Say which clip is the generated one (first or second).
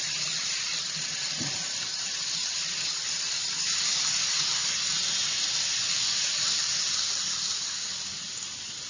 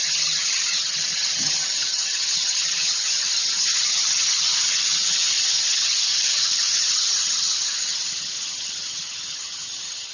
second